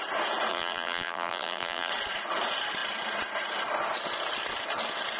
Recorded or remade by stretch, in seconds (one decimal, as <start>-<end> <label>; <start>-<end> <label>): 0.0-0.5 recorded; 0.5-1.9 remade; 1.9-5.2 recorded